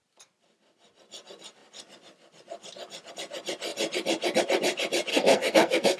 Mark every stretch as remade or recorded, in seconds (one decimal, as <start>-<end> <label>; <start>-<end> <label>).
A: 0.0-5.1 recorded; 5.1-6.0 remade